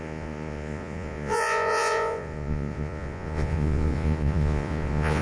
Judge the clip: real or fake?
fake